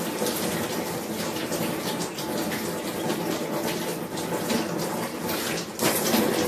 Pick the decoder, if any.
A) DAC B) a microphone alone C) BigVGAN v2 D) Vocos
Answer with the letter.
B